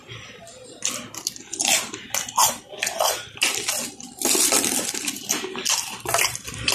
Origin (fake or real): fake